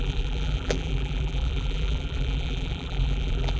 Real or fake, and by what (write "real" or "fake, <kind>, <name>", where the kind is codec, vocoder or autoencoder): fake, vocoder, BigVGAN v2